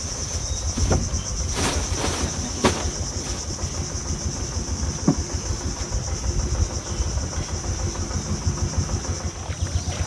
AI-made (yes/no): no